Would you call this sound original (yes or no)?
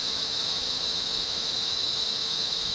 no